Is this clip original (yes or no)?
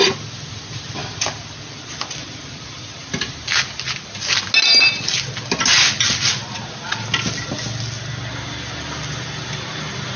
yes